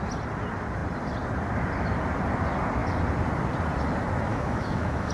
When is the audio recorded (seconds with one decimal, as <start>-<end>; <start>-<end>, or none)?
0.0-4.3